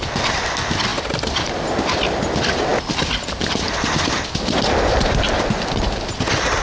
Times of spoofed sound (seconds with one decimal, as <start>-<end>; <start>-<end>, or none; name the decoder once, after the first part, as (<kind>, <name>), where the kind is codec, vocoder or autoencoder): none